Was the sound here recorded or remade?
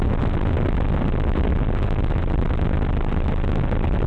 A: recorded